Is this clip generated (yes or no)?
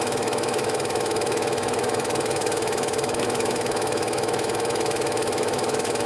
yes